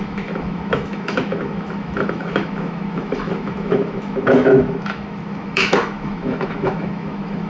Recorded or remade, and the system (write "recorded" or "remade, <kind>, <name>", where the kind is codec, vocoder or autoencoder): remade, autoencoder, DAC-VAE